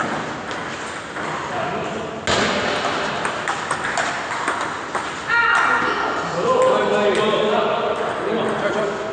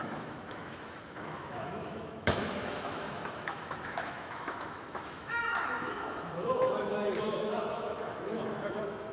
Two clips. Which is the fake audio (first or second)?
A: second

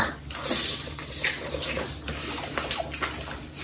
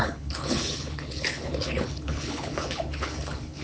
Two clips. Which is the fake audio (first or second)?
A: second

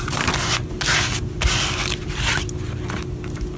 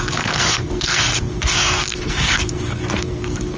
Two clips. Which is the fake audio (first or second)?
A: second